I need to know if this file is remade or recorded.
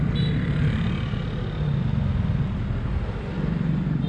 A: recorded